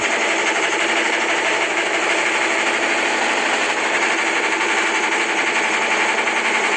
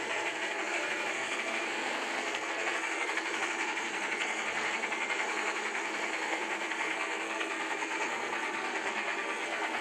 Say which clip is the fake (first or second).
second